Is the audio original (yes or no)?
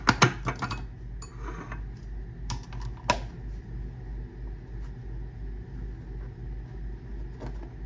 yes